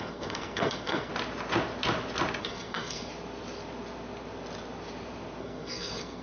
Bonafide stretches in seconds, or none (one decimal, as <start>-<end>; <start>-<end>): 1.1-2.4; 3.1-5.4